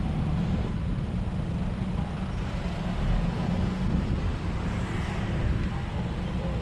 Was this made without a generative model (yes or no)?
yes